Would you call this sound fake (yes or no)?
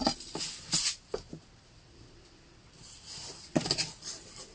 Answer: no